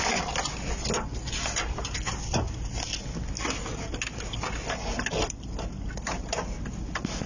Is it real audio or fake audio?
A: real